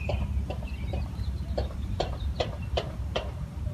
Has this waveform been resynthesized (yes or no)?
yes